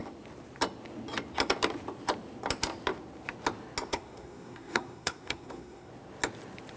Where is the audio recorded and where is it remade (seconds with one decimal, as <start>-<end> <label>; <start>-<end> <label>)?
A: 0.0-3.9 recorded; 3.9-5.9 remade; 5.9-6.8 recorded